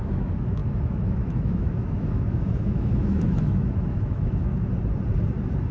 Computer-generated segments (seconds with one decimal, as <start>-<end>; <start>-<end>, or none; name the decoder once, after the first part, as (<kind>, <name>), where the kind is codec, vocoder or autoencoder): 0.0-4.5 (autoencoder, DAC-VAE)